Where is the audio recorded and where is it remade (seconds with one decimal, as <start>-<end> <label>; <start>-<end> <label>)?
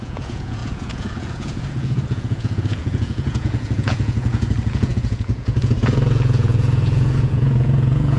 0.0-8.2 remade